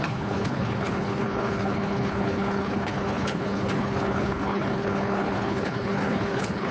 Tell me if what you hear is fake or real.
fake